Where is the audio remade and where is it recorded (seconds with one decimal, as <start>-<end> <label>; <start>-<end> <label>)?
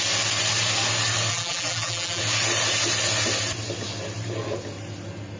0.0-1.3 recorded; 1.3-2.2 remade; 2.2-5.4 recorded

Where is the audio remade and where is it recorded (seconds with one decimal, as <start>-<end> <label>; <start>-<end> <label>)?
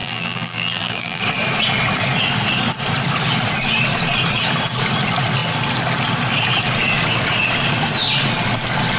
0.0-1.2 remade; 1.2-9.0 recorded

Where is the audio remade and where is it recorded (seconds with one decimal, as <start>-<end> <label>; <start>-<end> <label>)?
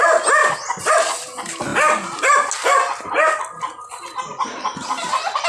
0.0-0.4 recorded; 0.4-0.9 remade; 0.9-1.7 recorded; 1.7-2.5 remade; 2.5-5.5 recorded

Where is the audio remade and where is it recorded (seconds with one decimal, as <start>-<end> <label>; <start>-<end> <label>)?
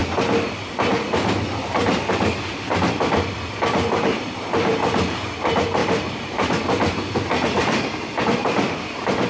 0.0-5.8 recorded; 5.8-8.2 remade; 8.2-9.3 recorded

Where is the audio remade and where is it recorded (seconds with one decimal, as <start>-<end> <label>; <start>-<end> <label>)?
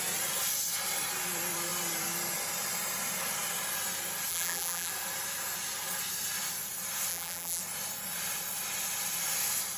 0.0-4.3 recorded; 4.3-4.9 remade; 4.9-7.1 recorded; 7.1-7.6 remade; 7.6-9.8 recorded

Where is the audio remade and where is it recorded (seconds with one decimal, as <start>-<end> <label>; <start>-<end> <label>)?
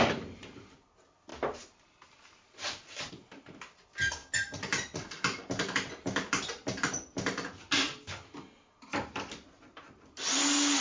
0.0-10.8 recorded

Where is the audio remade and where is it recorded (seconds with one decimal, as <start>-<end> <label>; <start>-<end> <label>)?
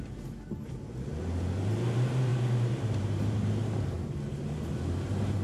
0.0-2.3 recorded; 2.3-3.5 remade; 3.5-5.4 recorded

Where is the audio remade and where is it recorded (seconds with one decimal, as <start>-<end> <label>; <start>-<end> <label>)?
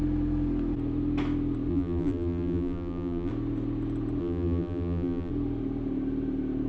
0.0-1.7 recorded; 1.7-3.3 remade; 3.3-4.2 recorded; 4.2-5.3 remade; 5.3-6.7 recorded